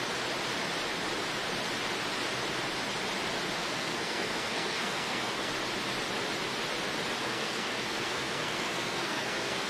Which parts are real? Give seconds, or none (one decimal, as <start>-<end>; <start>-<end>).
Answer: 0.0-3.6; 5.5-7.2